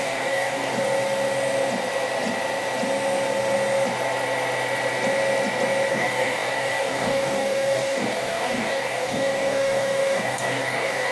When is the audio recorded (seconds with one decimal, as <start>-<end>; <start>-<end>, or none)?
0.7-5.9